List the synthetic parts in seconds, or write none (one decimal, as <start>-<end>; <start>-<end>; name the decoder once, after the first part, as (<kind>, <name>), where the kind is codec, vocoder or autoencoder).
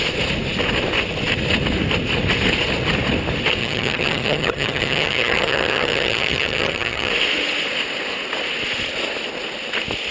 3.6-7.1 (vocoder, HiFi-GAN)